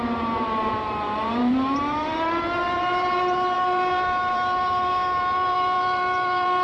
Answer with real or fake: fake